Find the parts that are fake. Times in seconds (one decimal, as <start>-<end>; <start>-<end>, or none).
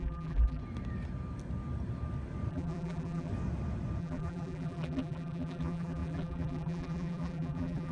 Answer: 0.0-0.6; 2.5-3.3; 4.0-7.9